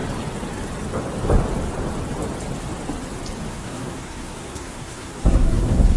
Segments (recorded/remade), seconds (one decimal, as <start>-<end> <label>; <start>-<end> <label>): 0.0-3.5 recorded; 3.5-6.0 remade